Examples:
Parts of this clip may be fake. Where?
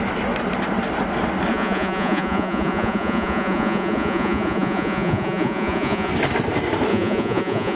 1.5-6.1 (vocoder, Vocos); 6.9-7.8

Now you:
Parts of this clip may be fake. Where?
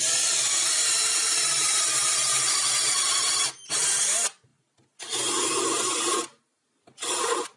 none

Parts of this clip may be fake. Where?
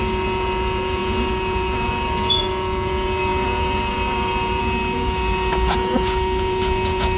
0.0-7.2 (vocoder, Vocos)